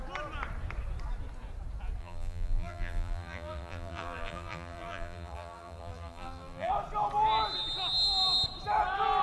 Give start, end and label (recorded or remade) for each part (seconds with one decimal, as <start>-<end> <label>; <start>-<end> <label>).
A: 0.0-2.0 recorded; 2.0-6.7 remade; 6.7-9.2 recorded